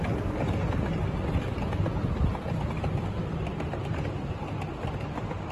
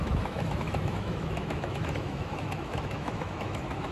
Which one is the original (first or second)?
first